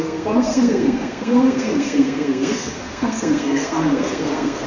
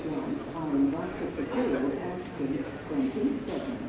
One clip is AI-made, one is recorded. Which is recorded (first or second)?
second